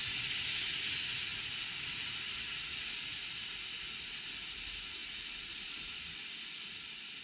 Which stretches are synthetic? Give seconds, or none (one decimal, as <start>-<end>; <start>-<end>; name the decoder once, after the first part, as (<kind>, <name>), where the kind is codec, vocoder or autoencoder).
none